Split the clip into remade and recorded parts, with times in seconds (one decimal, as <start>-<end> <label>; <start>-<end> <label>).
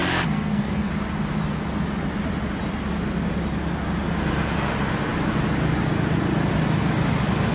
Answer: 0.0-0.9 remade; 0.9-7.5 recorded